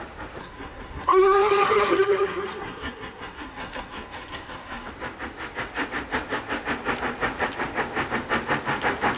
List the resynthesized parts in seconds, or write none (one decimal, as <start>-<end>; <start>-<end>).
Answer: 0.4-4.9